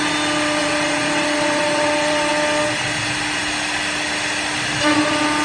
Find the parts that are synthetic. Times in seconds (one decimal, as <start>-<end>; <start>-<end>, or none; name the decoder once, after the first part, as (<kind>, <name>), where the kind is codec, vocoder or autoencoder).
0.6-2.3 (vocoder, BigVGAN v2)